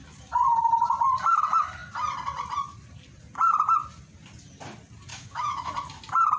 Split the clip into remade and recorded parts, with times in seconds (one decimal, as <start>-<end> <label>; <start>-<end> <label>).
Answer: 0.0-5.1 recorded; 5.1-5.7 remade; 5.7-6.4 recorded